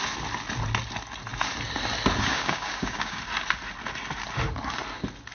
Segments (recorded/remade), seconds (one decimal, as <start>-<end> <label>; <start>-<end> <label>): 0.0-2.3 recorded; 2.3-3.2 remade; 3.2-5.3 recorded